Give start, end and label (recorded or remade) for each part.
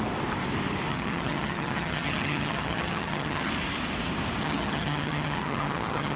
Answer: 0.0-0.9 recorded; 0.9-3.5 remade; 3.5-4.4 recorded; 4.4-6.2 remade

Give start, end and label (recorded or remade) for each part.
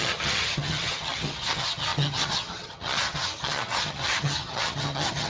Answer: 0.0-5.3 remade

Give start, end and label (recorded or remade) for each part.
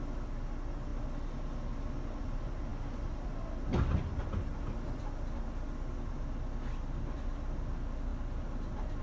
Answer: 0.0-9.0 recorded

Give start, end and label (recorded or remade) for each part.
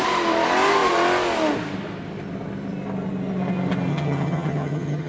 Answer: 0.0-3.9 recorded; 3.9-5.1 remade